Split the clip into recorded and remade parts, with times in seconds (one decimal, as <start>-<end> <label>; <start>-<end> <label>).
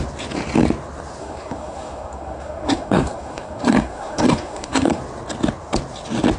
0.0-1.2 recorded; 1.2-5.0 remade; 5.0-6.4 recorded